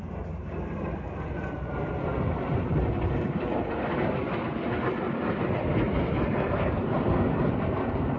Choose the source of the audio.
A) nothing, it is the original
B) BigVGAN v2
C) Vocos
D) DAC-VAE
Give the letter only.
A